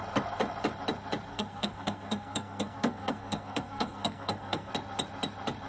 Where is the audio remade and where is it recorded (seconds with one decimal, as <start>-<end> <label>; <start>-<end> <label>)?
0.0-1.3 recorded; 1.3-4.7 remade; 4.7-5.7 recorded